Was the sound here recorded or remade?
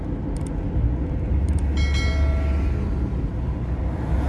recorded